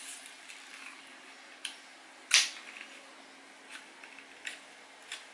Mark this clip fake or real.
real